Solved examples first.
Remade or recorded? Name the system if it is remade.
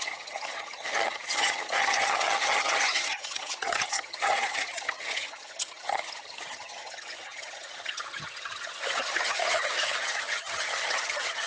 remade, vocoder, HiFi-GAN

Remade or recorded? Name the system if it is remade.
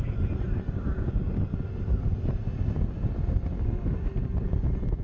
recorded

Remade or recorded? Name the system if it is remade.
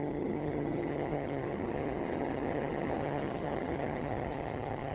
remade, vocoder, HiFi-GAN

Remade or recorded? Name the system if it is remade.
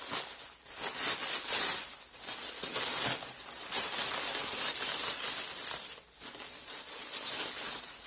recorded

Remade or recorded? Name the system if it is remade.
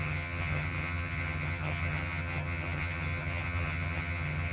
remade, vocoder, HiFi-GAN